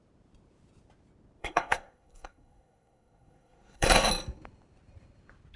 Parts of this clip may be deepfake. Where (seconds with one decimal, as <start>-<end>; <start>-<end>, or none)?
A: 1.4-4.1